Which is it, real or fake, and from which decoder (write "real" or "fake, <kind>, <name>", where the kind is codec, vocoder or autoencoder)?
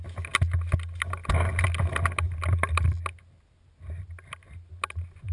real